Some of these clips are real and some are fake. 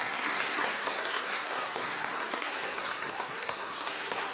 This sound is fake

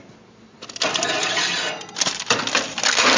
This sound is real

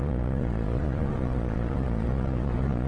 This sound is fake